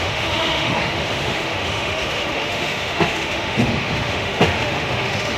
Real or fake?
fake